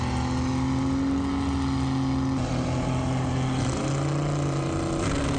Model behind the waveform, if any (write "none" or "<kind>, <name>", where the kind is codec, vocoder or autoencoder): none